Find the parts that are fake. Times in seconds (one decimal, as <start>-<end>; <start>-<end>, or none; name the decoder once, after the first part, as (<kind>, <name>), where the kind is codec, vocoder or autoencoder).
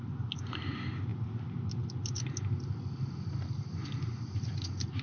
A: none